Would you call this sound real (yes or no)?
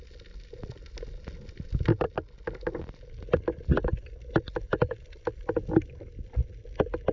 yes